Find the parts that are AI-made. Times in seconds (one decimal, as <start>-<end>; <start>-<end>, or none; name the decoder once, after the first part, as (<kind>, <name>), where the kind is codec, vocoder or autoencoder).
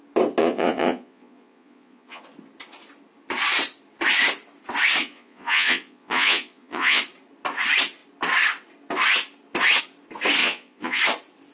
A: 0.4-2.2 (vocoder, Vocos); 5.0-7.0; 10.4-11.0